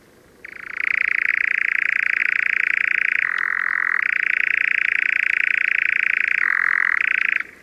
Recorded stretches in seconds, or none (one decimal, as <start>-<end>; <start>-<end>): 0.0-7.6